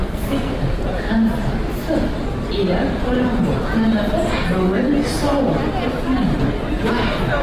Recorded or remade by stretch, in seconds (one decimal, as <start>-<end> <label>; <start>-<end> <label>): 0.0-0.5 remade; 0.5-7.4 recorded